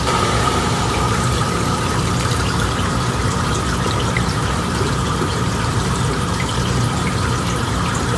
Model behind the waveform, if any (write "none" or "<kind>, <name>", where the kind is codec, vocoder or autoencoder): vocoder, BigVGAN v2